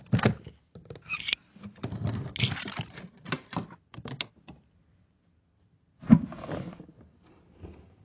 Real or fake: real